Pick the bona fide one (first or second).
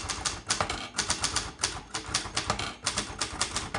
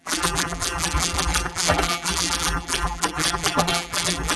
first